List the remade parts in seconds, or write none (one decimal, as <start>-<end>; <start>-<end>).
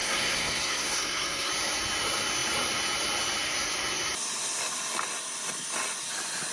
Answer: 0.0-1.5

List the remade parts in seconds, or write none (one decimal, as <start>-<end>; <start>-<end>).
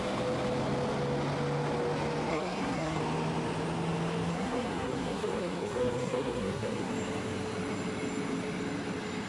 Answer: 2.3-3.0; 4.3-6.9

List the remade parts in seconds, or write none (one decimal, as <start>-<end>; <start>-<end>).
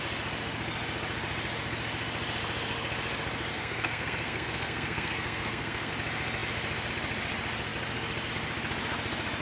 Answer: 3.5-5.9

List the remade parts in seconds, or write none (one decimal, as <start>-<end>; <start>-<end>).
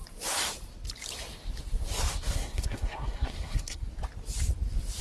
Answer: 2.1-3.8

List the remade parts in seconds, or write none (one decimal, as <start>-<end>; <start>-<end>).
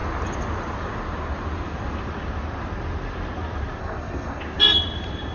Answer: 3.8-4.4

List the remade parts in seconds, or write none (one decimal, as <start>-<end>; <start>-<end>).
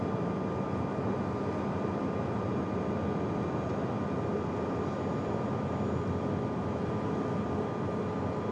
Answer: none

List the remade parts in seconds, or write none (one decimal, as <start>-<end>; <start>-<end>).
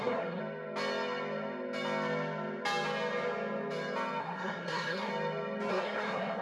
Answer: 0.0-0.4; 4.2-5.1; 5.7-6.4